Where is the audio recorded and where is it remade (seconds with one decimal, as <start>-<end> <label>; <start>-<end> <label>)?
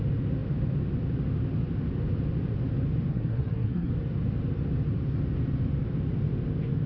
0.0-3.1 recorded; 3.1-3.9 remade; 3.9-6.9 recorded